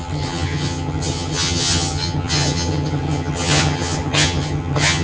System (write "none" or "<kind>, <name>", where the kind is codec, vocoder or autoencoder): vocoder, HiFi-GAN